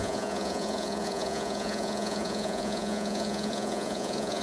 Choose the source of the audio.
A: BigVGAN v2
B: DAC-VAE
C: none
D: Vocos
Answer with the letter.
D